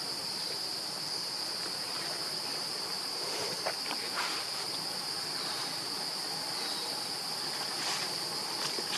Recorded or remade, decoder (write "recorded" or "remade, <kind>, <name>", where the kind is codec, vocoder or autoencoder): recorded